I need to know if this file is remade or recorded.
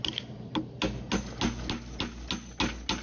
recorded